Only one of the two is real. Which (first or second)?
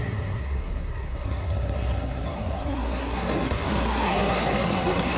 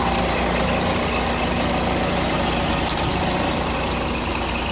second